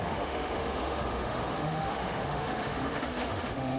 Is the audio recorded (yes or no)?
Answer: no